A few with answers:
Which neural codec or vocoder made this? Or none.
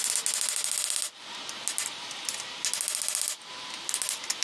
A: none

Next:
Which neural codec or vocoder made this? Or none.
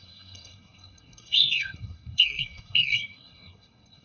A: codec, SNAC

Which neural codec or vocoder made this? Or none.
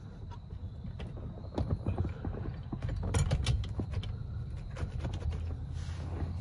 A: none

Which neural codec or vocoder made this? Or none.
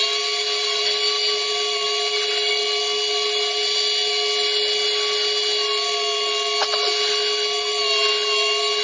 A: none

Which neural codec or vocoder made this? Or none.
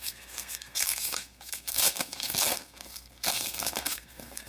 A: codec, SNAC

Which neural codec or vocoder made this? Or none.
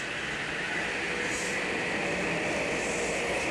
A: none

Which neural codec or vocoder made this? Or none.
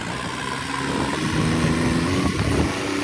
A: none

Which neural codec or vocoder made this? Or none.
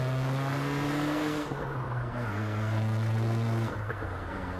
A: codec, SNAC